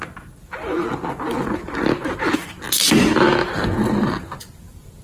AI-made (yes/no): no